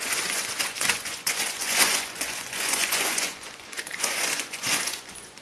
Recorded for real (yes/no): no